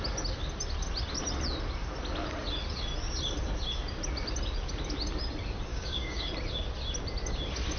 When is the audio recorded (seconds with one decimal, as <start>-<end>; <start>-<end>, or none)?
0.0-5.7; 6.3-7.8

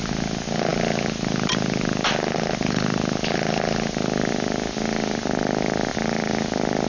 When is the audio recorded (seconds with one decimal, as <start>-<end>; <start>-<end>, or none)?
0.0-6.9

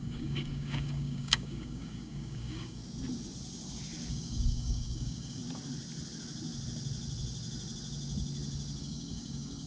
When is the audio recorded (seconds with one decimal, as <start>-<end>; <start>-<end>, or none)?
2.8-4.1; 5.4-8.8

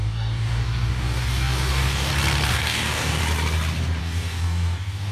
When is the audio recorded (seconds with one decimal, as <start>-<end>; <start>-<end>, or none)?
2.1-2.5; 3.2-4.0

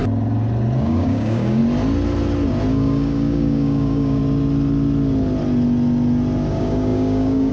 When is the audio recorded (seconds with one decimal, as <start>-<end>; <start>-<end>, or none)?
0.0-0.8; 1.6-2.7; 4.2-6.5